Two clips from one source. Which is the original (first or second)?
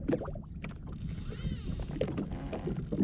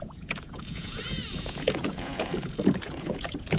first